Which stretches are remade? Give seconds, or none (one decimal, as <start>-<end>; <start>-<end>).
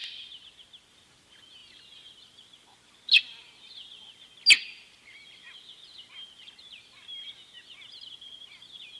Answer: none